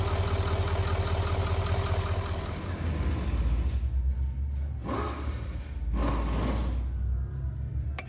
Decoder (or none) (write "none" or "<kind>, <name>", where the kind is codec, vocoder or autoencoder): none